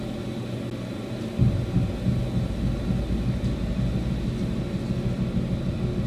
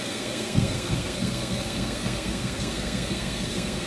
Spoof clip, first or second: second